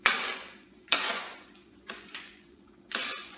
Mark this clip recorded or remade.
remade